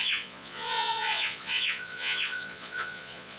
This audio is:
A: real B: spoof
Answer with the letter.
B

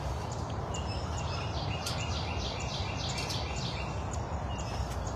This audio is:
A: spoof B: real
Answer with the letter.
B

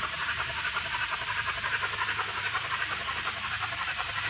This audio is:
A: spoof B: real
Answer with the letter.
A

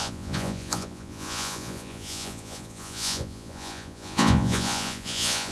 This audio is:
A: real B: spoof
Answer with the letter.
B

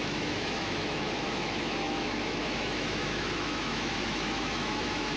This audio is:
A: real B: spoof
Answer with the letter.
B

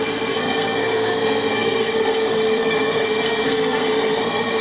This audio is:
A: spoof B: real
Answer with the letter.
A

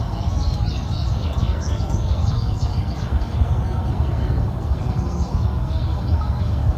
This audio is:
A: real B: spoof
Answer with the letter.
B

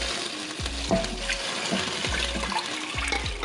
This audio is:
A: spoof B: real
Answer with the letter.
B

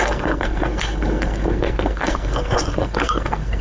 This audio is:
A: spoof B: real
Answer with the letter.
A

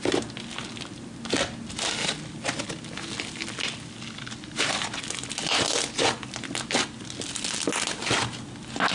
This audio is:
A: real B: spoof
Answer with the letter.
A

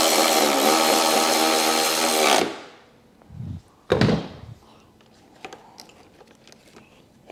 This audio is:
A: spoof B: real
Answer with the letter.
B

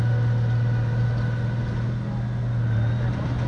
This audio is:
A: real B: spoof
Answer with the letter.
A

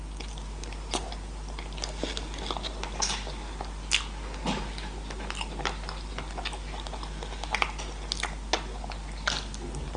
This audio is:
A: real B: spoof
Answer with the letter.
A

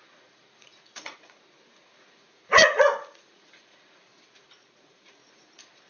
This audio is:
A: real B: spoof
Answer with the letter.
B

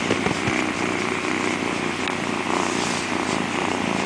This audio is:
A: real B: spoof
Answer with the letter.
A